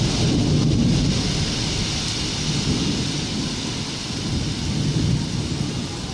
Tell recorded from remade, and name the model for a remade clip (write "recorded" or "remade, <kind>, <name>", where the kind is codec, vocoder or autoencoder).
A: recorded